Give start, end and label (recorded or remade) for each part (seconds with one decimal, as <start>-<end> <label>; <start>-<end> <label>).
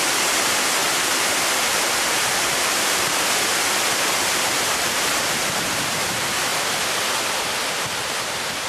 0.0-0.8 remade; 0.8-4.3 recorded; 4.3-6.5 remade; 6.5-7.7 recorded; 7.7-8.7 remade